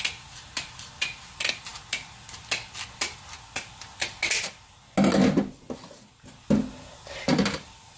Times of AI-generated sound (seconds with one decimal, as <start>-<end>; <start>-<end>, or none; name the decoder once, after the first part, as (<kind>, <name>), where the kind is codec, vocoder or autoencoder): none